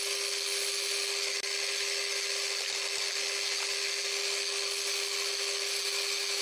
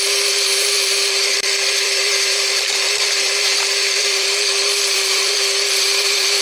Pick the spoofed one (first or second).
second